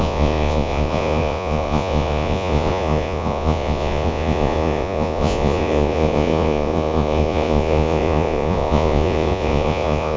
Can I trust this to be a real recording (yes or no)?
no